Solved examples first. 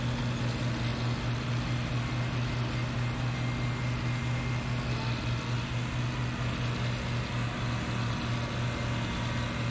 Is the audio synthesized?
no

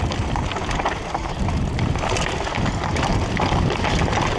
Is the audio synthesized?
no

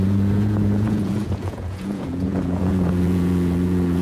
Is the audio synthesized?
yes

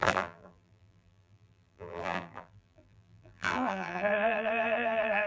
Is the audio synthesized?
yes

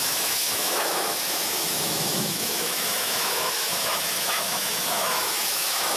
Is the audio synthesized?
yes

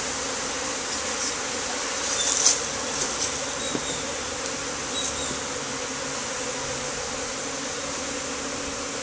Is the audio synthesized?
no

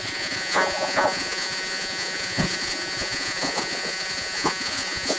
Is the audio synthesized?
yes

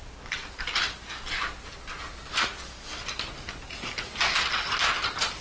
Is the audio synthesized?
no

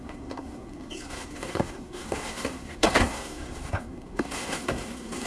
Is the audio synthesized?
yes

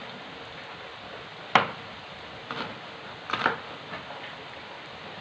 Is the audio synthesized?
no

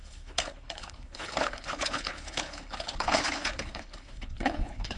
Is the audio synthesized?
yes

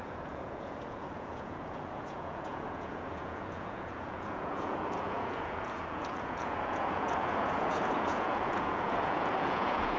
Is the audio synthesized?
yes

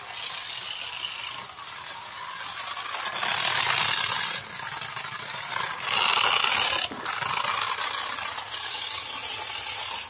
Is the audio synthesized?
no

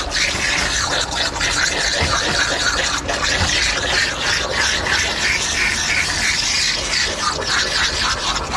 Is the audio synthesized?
no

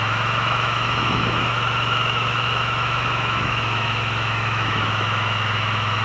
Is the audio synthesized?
yes